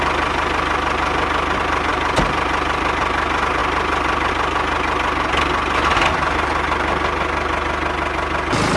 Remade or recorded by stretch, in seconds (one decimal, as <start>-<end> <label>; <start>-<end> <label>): 0.0-8.8 recorded